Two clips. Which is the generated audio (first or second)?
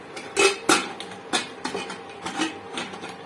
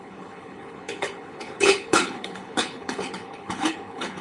second